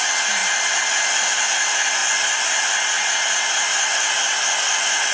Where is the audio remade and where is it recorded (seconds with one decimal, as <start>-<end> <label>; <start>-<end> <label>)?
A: 0.0-5.1 recorded